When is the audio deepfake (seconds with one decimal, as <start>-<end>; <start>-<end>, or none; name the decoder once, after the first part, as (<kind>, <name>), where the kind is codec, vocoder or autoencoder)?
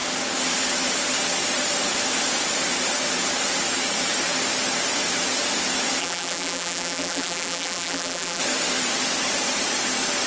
6.0-8.4 (vocoder, BigVGAN v2)